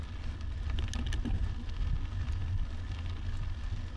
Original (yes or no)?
yes